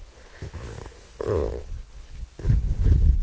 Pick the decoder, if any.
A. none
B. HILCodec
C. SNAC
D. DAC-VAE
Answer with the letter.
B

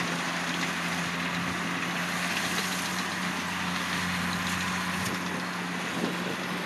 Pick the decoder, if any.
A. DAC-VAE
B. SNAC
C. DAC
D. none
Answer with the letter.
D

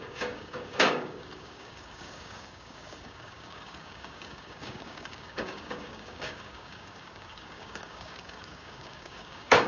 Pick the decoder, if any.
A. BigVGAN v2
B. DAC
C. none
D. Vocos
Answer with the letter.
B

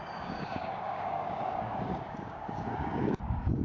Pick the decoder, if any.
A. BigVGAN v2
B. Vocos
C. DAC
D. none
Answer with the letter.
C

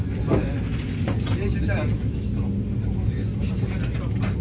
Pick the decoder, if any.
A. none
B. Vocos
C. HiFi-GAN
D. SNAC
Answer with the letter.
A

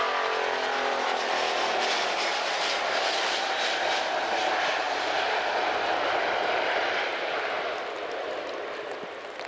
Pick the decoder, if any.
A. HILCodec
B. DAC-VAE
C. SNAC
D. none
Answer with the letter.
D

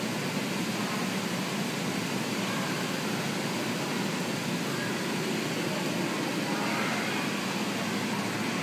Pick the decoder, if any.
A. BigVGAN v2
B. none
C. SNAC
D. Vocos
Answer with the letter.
B